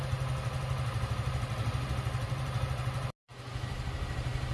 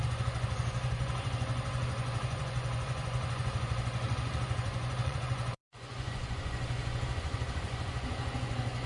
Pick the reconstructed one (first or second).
second